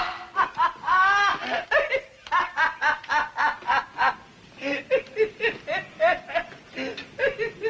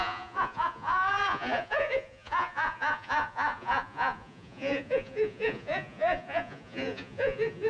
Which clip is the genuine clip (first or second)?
first